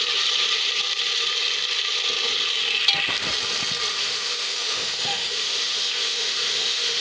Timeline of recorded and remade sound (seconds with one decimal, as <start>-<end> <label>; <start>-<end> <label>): 0.0-3.9 recorded; 3.9-7.0 remade